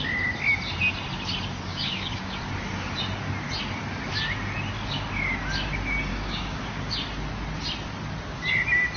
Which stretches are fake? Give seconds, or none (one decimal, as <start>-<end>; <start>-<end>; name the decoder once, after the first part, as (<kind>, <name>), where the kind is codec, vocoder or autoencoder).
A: 1.7-2.4 (codec, DAC); 6.1-6.9

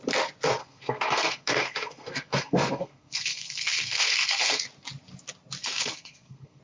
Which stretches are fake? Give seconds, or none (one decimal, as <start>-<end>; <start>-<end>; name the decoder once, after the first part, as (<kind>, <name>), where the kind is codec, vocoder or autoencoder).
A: 0.6-4.6 (codec, SNAC); 5.6-6.6

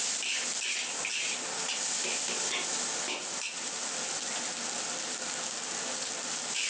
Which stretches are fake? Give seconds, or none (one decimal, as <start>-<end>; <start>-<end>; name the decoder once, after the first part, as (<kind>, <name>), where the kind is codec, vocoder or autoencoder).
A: none